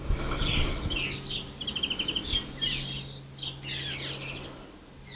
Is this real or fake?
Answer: real